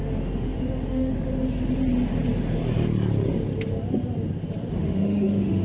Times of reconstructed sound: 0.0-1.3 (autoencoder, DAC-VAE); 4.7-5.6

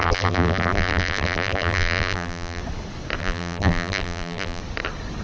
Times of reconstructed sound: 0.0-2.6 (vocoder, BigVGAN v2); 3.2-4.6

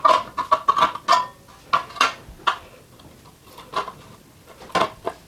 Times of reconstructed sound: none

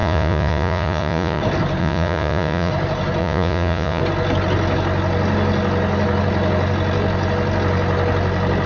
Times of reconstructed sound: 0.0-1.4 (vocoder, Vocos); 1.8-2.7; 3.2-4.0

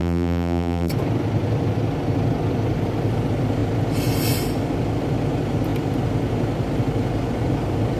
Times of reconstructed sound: 0.0-0.9 (vocoder, BigVGAN v2)